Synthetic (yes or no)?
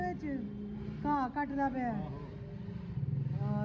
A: no